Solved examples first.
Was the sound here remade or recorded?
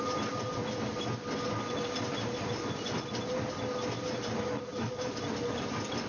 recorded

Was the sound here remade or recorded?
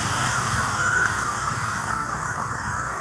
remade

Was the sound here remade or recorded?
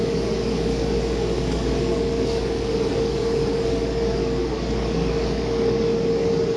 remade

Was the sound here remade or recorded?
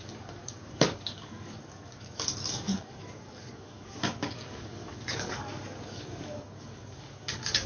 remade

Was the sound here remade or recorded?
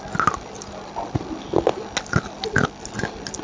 recorded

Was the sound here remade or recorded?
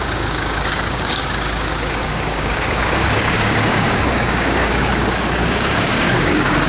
remade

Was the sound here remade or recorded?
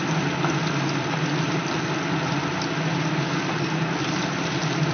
recorded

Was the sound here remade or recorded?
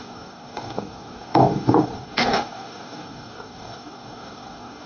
remade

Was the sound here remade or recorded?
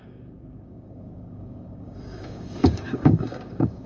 remade